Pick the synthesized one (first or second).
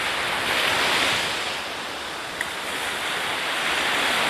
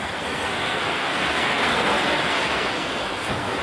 second